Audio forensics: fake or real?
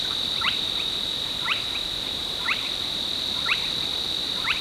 fake